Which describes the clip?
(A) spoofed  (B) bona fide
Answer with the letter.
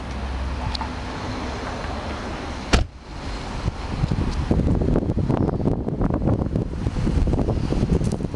B